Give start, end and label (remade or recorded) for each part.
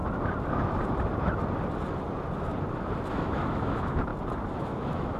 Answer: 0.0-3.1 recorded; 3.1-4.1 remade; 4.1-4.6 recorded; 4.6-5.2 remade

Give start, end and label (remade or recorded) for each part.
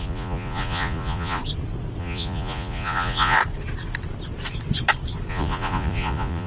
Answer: 0.0-1.4 remade; 1.4-2.0 recorded; 2.0-3.4 remade; 3.4-5.3 recorded; 5.3-6.5 remade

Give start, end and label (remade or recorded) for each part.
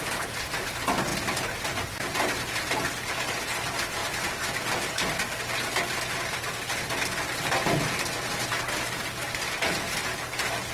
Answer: 0.0-10.7 recorded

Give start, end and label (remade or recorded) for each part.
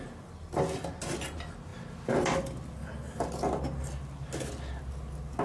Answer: 0.0-5.4 recorded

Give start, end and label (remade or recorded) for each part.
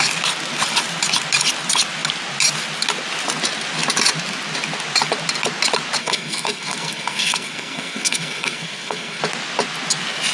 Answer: 0.0-6.0 recorded; 6.0-9.2 remade; 9.2-10.3 recorded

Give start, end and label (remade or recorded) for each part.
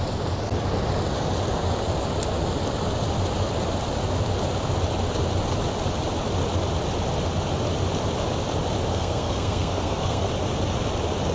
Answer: 0.0-8.9 recorded; 8.9-10.3 remade; 10.3-11.3 recorded